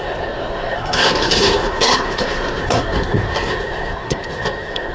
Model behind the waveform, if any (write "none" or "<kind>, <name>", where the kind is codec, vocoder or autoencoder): codec, SNAC